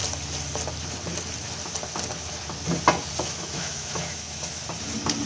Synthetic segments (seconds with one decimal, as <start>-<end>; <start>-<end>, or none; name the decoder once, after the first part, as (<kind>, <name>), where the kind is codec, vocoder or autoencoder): 3.2-4.6 (autoencoder, DAC-VAE)